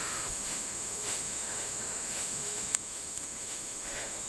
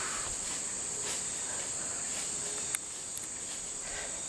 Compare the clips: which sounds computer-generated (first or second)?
first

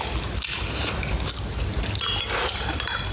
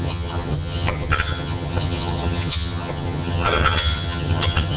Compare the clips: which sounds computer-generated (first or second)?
second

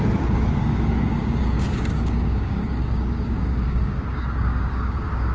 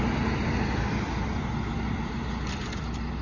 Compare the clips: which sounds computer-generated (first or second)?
first